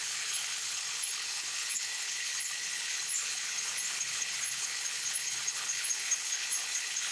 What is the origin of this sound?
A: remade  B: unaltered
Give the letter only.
A